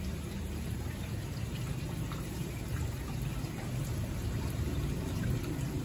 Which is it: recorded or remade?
remade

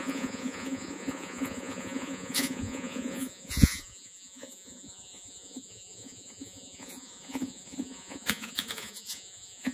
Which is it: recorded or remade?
remade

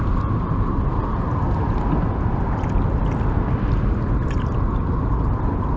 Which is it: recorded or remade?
recorded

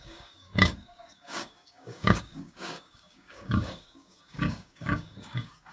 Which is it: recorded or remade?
remade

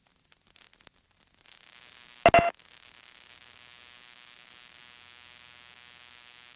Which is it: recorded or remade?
recorded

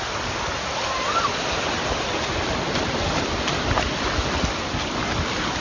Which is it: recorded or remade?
recorded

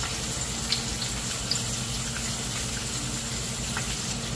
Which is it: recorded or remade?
recorded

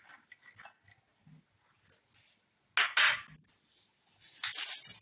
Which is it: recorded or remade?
recorded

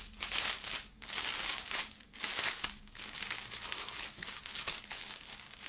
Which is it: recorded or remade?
remade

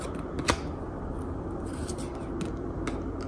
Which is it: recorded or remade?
recorded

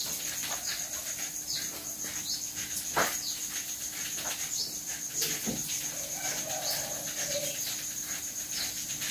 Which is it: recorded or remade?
recorded